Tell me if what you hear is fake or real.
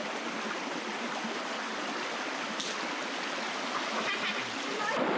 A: real